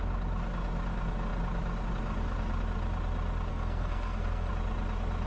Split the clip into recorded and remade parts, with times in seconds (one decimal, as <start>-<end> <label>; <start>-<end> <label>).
0.0-3.5 recorded; 3.5-4.5 remade; 4.5-5.3 recorded